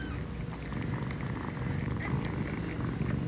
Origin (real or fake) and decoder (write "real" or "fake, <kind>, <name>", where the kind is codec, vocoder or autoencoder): real